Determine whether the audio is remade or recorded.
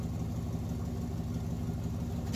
recorded